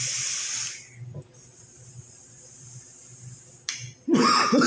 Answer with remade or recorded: recorded